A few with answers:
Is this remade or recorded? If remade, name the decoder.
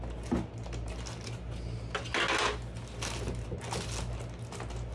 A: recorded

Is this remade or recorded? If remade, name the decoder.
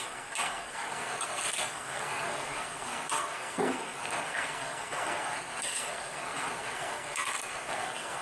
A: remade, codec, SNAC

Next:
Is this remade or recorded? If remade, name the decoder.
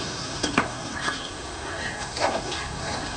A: remade, codec, SNAC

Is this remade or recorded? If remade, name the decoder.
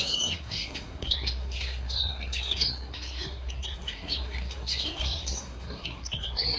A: remade, codec, SNAC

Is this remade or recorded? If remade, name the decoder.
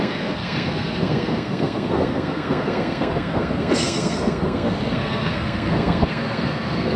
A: remade, codec, SNAC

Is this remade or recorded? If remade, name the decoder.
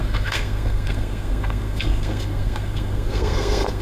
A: remade, codec, SNAC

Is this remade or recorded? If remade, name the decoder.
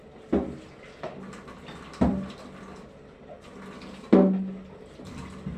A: recorded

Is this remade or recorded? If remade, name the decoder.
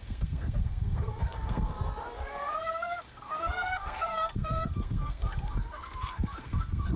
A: remade, codec, SNAC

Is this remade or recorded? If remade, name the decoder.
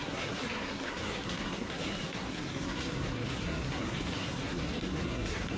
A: remade, codec, SNAC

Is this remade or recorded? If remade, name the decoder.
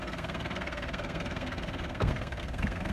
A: remade, codec, SNAC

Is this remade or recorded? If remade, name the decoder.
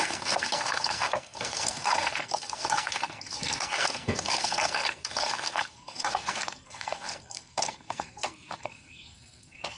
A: remade, codec, SNAC